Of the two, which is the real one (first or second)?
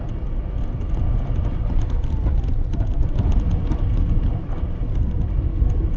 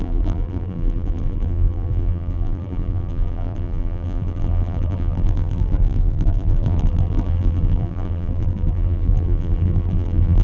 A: first